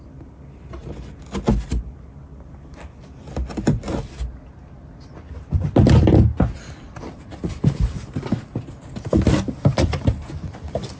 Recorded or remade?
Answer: recorded